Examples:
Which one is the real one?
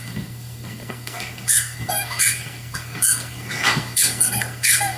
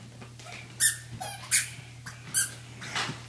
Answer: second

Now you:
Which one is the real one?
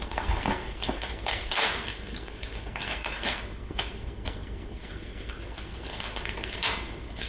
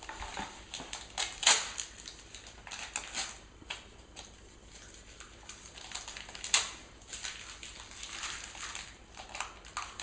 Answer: second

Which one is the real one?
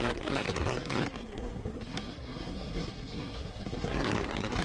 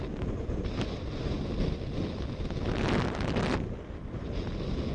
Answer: second